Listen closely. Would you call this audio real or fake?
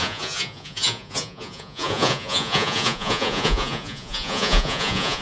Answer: fake